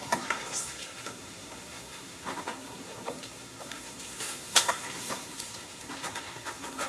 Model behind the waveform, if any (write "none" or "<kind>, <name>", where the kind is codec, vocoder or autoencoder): codec, SNAC